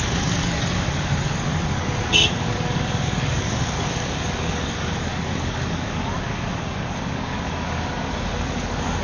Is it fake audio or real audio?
fake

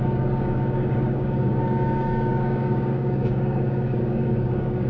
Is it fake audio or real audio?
fake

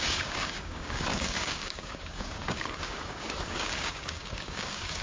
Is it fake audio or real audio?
fake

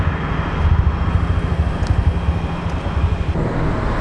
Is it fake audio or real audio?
real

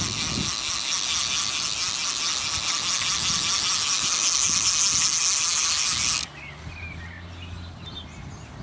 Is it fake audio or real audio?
real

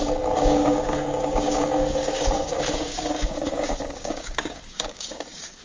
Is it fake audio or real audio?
fake